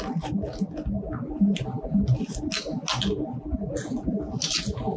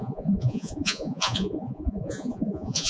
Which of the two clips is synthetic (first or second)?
second